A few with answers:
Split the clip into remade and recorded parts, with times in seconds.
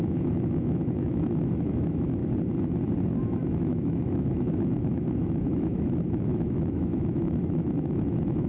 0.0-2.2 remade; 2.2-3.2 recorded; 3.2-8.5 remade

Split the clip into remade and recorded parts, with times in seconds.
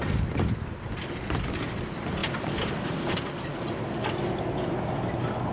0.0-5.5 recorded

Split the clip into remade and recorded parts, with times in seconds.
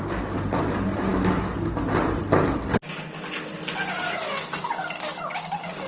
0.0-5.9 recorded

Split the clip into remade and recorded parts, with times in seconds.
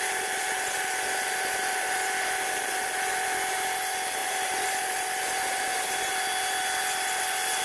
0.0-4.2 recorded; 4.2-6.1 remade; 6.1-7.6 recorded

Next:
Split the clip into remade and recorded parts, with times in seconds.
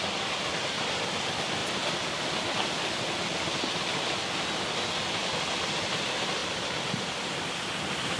0.0-8.2 recorded